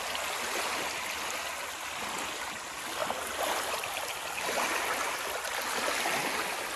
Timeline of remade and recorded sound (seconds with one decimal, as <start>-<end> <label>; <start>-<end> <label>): 0.0-6.8 recorded